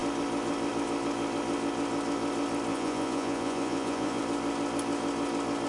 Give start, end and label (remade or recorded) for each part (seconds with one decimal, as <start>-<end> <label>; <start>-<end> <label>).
0.0-2.7 recorded; 2.7-4.2 remade; 4.2-5.7 recorded